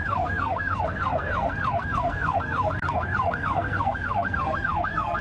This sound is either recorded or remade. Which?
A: remade